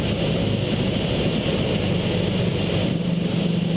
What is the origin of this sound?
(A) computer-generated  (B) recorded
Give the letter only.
B